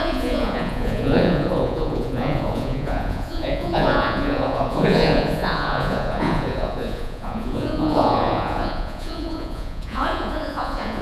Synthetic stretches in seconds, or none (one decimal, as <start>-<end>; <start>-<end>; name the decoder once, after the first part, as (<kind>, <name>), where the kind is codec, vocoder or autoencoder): 0.0-11.0 (vocoder, Vocos)